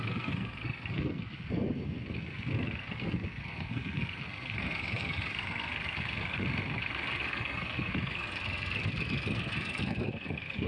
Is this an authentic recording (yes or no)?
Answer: no